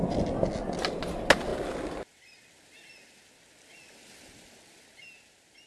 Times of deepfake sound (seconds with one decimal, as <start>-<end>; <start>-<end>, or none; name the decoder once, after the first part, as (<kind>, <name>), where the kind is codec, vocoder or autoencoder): none